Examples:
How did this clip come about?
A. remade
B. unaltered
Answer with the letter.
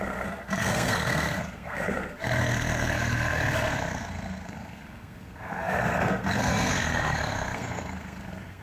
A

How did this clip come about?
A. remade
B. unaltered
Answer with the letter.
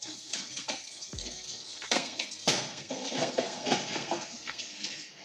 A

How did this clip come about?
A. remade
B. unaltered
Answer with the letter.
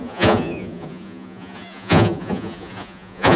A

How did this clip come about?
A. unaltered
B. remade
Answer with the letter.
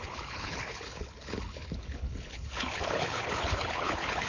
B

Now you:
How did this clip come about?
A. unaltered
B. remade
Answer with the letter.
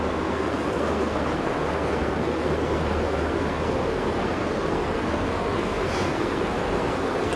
B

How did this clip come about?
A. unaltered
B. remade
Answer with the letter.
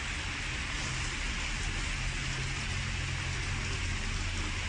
A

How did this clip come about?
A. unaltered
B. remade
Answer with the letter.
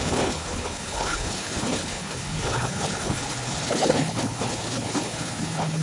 B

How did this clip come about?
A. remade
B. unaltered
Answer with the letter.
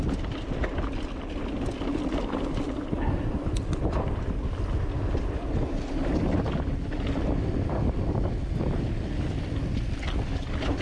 B